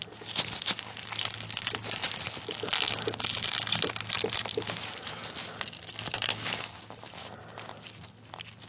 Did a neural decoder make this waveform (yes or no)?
no